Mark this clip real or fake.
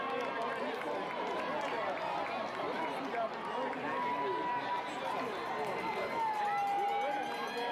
real